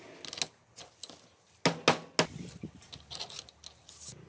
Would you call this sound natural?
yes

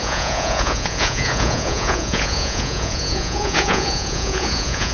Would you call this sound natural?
no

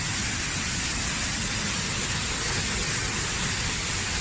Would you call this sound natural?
yes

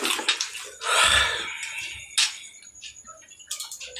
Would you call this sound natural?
yes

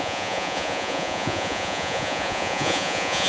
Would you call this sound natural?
no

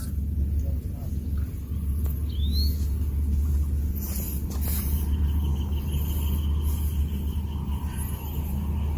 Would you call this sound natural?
yes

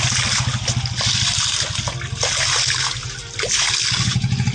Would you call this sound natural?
yes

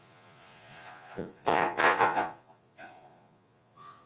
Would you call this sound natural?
no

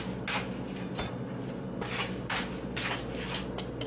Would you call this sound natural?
yes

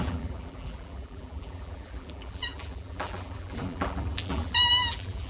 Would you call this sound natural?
no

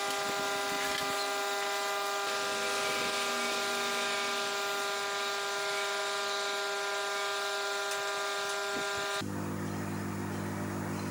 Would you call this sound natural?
yes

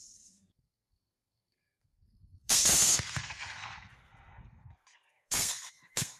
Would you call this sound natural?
no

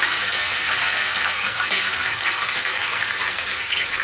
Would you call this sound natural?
no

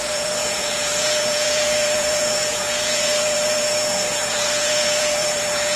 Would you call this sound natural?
no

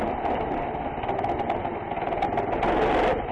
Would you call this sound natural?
yes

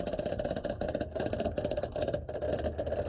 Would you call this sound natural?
yes